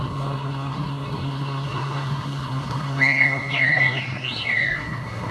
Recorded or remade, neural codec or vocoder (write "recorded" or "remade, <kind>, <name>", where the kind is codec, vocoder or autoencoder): remade, codec, SNAC